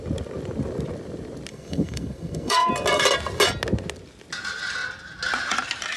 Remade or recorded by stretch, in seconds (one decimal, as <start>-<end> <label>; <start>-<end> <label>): 0.0-1.5 recorded; 1.5-2.7 remade; 2.7-6.0 recorded